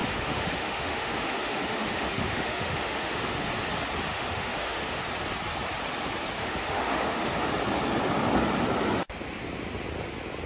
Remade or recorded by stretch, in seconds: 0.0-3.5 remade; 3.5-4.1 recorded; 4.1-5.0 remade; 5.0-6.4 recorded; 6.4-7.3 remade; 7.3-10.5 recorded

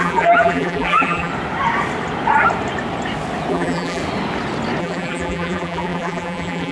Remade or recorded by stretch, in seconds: 0.0-1.3 remade; 1.3-3.5 recorded; 3.5-4.0 remade; 4.0-4.8 recorded; 4.8-6.7 remade

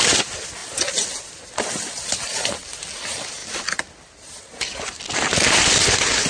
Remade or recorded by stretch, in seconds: 0.0-6.3 recorded